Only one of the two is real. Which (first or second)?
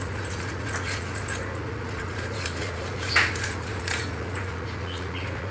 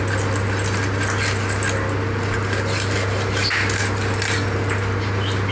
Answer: second